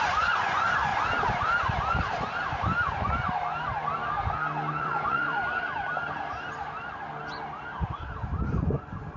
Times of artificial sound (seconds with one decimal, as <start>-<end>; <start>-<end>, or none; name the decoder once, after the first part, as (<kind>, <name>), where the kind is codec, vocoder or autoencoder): 0.0-0.9 (vocoder, Vocos); 4.8-5.4; 8.6-9.2